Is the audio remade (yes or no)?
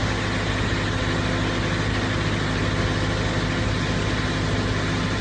no